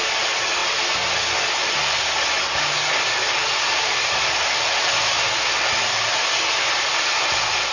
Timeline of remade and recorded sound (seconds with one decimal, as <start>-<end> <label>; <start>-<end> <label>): 0.0-3.4 recorded; 3.4-4.0 remade; 4.0-7.7 recorded